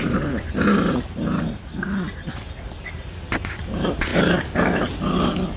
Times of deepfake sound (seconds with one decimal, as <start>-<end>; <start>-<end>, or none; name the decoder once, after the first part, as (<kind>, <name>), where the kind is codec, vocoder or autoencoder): none